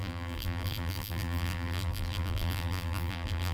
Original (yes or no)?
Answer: no